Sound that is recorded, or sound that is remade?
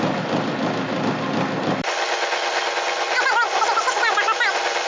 recorded